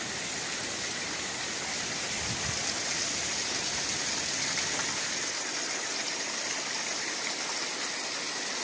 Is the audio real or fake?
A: real